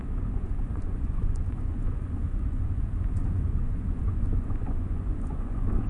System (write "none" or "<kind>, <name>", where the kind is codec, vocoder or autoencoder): vocoder, Vocos